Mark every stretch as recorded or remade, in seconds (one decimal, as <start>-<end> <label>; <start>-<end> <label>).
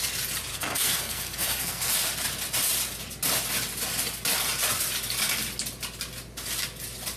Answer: 0.0-0.5 recorded; 0.5-1.9 remade; 1.9-7.2 recorded